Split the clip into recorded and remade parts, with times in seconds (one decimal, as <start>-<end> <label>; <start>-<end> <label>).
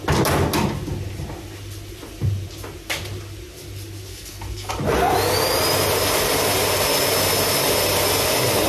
0.0-4.1 recorded; 4.1-4.7 remade; 4.7-8.7 recorded